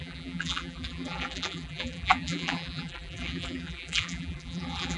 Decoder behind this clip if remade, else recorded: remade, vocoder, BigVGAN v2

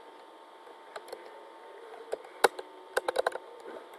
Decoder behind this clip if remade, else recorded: recorded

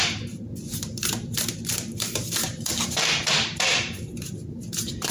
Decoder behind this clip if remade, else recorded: remade, vocoder, BigVGAN v2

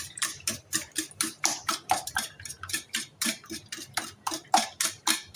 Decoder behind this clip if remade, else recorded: remade, vocoder, BigVGAN v2